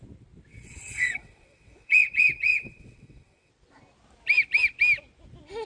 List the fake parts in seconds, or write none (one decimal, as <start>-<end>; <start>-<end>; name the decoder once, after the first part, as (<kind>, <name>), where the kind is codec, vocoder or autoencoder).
0.5-3.5 (vocoder, WaveNeXt)